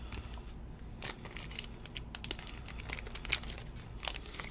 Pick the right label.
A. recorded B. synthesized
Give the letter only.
A